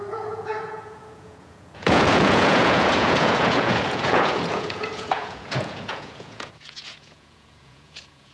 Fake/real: fake